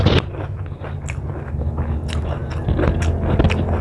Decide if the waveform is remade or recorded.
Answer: recorded